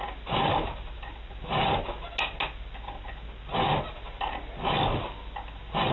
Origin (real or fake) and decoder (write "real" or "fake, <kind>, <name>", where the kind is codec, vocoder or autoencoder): real